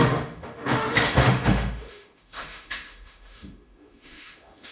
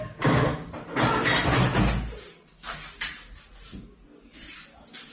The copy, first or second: first